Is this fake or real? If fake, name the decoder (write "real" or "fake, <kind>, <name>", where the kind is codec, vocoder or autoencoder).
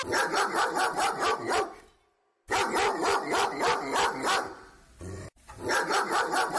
real